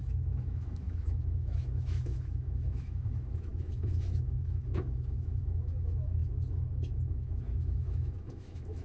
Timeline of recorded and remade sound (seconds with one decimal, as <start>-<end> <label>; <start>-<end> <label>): 0.0-8.8 remade

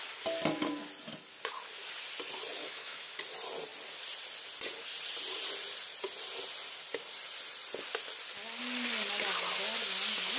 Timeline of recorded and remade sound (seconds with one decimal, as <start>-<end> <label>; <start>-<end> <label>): 0.0-2.6 recorded; 2.6-3.2 remade; 3.2-10.4 recorded